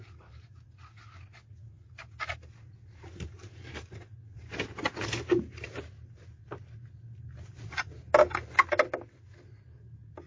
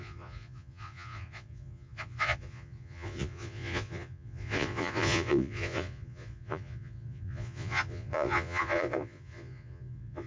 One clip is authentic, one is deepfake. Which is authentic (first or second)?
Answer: first